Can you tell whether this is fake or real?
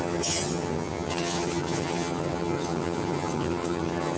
fake